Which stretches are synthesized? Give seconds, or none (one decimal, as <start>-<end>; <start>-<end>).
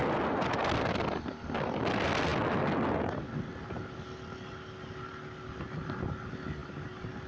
none